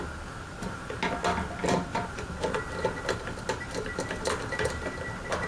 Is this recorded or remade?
recorded